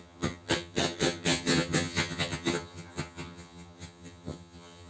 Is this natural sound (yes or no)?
no